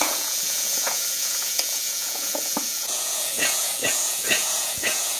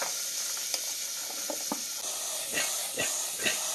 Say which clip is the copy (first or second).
first